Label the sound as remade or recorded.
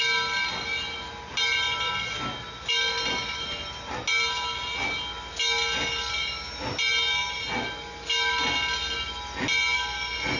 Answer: recorded